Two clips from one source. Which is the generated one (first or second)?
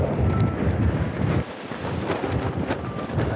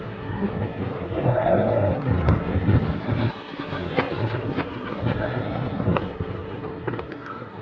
second